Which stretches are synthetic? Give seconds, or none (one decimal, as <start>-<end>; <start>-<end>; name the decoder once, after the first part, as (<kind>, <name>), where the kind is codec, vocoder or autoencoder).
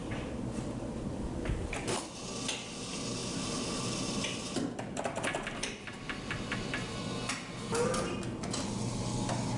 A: 0.0-2.3 (vocoder, BigVGAN v2); 3.2-7.7